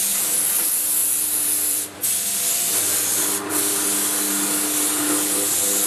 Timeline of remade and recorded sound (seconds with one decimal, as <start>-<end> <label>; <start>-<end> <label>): 0.0-1.0 recorded; 1.0-3.5 remade; 3.5-5.9 recorded